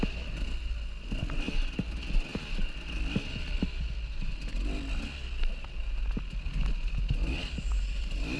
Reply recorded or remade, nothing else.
recorded